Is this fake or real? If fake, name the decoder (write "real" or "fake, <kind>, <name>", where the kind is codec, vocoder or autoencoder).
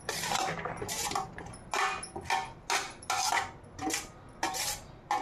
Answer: real